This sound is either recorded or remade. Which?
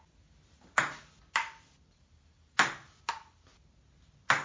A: recorded